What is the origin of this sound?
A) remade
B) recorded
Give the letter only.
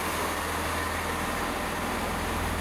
B